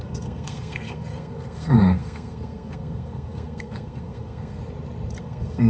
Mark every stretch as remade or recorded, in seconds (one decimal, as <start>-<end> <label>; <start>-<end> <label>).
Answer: 0.0-4.6 remade; 4.6-5.2 recorded; 5.2-5.7 remade